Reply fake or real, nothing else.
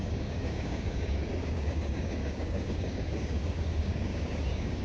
fake